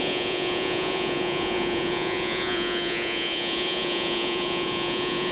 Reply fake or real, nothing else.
fake